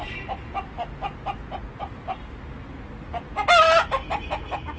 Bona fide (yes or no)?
yes